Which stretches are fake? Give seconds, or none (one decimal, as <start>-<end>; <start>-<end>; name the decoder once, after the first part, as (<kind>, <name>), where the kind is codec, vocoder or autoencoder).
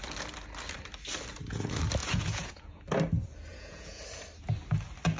2.0-2.8 (vocoder, Vocos); 3.5-4.0